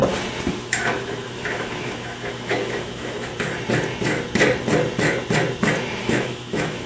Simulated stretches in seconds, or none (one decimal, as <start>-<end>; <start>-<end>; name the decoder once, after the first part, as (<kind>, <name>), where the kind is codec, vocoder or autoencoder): 0.5-3.3 (autoencoder, DAC-VAE); 6.0-6.9